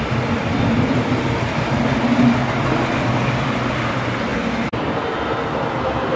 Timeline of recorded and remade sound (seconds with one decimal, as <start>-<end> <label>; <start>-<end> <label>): 0.0-6.2 recorded